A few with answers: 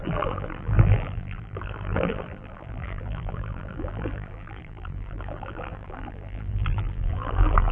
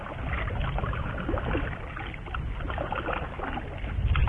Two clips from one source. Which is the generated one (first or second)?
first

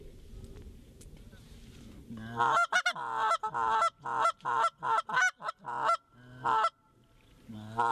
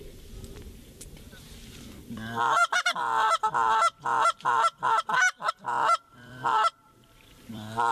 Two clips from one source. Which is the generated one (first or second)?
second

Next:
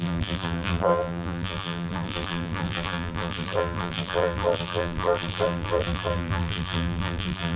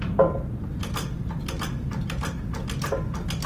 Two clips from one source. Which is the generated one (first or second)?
first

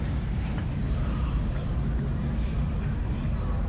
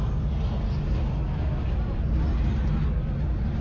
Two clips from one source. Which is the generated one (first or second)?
first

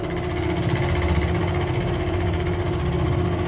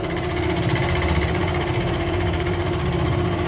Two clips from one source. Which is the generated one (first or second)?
second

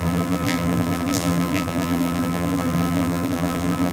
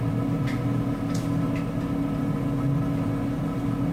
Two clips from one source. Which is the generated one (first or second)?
first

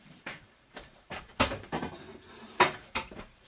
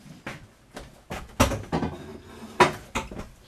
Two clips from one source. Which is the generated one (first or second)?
first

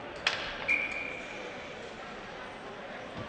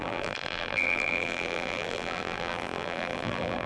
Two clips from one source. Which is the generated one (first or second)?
second